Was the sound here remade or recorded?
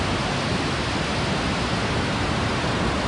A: recorded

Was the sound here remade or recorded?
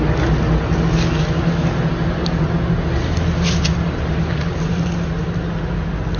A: recorded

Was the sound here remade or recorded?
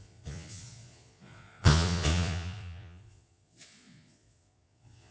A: remade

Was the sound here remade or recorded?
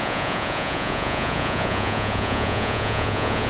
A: remade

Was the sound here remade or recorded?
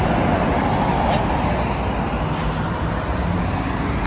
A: recorded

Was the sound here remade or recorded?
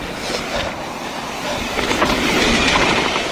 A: recorded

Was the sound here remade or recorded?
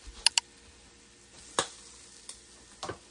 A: recorded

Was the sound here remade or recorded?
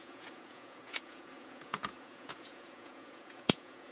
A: remade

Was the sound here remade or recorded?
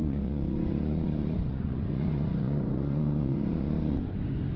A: remade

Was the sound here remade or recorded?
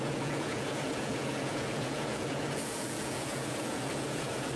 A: remade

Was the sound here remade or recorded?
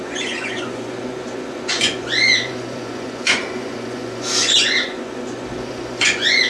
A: remade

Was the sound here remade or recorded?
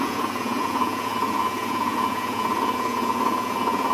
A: remade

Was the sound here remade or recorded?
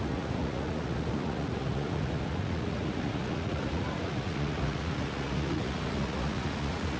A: remade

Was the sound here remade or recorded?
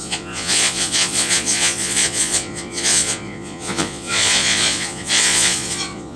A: remade